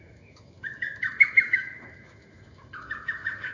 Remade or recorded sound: remade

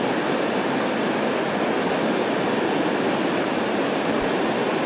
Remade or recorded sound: recorded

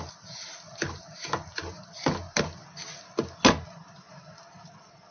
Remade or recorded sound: recorded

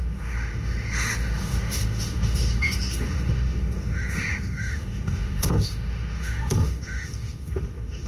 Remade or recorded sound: remade